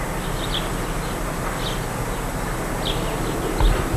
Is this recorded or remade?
recorded